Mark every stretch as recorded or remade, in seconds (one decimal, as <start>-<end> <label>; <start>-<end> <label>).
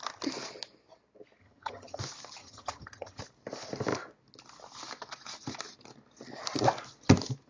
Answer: 0.0-1.4 recorded; 1.4-2.0 remade; 2.0-2.4 recorded; 2.4-3.2 remade; 3.2-7.5 recorded